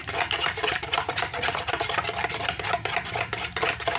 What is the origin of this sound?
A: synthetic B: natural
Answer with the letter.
A